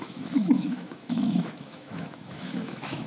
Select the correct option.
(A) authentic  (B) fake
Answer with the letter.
B